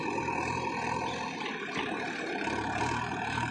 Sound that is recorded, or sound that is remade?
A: remade